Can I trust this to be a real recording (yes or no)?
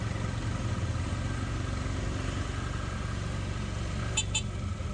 yes